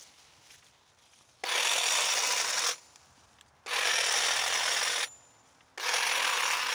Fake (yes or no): no